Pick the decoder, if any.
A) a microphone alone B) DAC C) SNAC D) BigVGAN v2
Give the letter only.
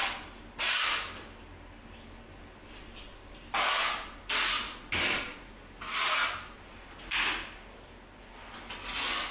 A